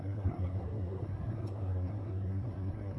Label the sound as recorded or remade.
remade